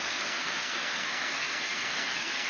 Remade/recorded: remade